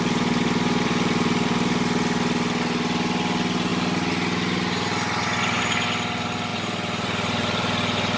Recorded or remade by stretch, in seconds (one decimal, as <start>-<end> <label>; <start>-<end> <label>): 0.0-6.5 recorded; 6.5-8.2 remade

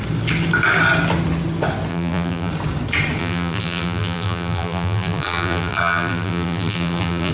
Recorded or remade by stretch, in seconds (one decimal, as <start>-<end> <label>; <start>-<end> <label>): 0.0-1.9 recorded; 1.9-2.5 remade; 2.5-3.2 recorded; 3.2-7.3 remade